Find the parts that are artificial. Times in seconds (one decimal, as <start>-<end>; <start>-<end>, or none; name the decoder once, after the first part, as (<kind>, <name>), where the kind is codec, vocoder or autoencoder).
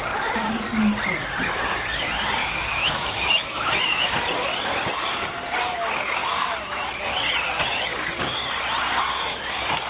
2.4-4.1 (autoencoder, DAC-VAE); 6.2-6.9